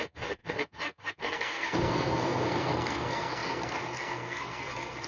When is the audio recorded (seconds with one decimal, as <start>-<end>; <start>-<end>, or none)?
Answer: none